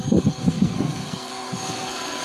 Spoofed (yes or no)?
yes